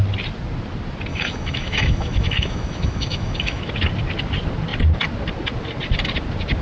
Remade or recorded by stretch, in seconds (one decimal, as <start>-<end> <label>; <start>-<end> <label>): 0.0-1.1 recorded; 1.1-3.6 remade; 3.6-6.6 recorded